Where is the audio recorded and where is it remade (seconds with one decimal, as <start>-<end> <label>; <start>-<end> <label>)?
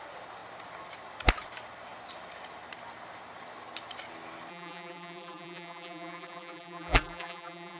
0.0-4.5 recorded; 4.5-7.8 remade